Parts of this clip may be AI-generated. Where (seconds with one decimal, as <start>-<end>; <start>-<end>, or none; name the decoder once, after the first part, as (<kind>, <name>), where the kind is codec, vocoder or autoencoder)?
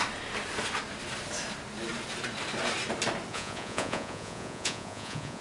3.3-5.4 (vocoder, Vocos)